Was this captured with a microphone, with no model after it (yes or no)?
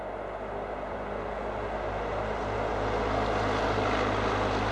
yes